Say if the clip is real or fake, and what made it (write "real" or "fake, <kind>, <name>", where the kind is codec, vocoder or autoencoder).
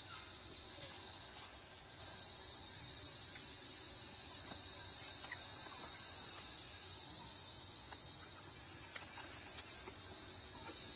fake, vocoder, Vocos